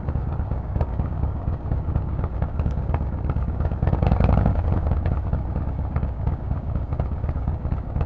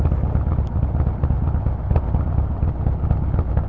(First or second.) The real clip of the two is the second